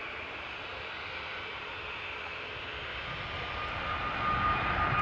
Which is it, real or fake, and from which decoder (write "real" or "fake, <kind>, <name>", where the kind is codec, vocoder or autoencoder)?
real